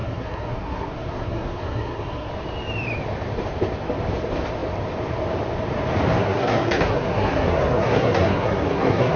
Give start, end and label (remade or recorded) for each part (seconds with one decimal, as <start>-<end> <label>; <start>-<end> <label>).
0.0-2.3 remade; 2.3-6.2 recorded; 6.2-9.2 remade